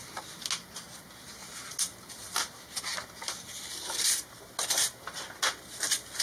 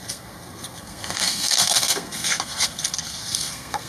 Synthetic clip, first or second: second